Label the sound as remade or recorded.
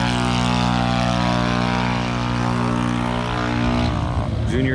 recorded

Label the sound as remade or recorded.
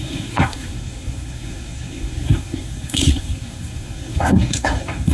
remade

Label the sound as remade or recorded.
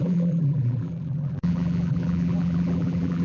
remade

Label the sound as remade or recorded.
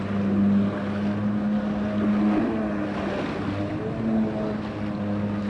recorded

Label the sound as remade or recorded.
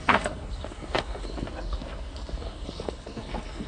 remade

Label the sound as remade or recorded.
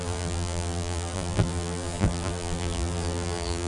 remade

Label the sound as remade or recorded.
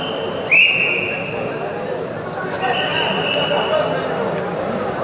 recorded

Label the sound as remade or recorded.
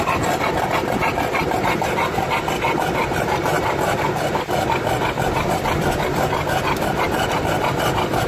recorded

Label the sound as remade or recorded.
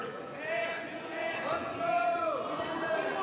remade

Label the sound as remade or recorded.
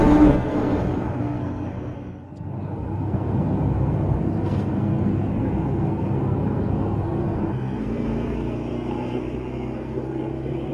remade